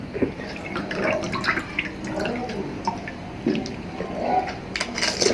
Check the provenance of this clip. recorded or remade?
recorded